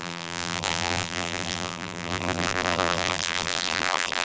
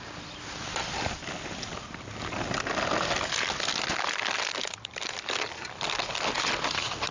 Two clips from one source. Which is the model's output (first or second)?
first